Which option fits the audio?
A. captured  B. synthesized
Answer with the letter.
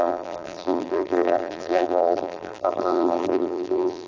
B